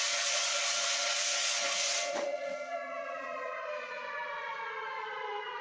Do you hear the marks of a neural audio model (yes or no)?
yes